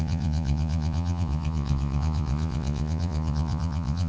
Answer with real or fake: fake